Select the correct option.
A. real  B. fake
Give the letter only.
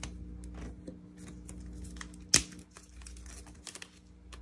A